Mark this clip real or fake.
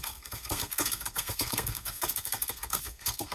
fake